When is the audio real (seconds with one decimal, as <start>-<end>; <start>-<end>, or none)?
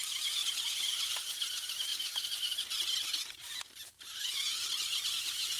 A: 0.0-4.6